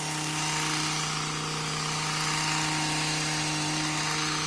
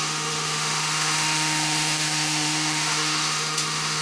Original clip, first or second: first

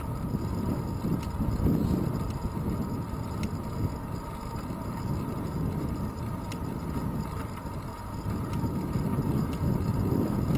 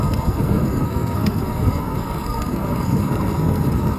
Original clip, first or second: first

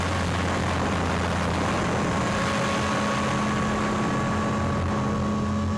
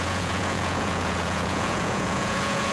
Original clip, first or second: first